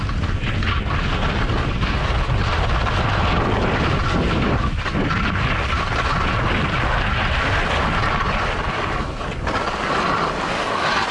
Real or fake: real